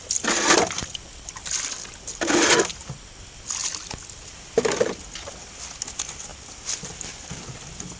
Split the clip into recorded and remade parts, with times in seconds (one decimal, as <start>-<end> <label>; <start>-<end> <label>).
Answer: 0.0-6.3 recorded; 6.3-6.8 remade; 6.8-8.0 recorded